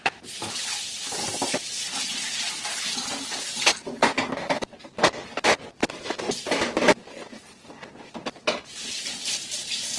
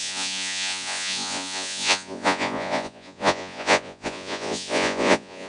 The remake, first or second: second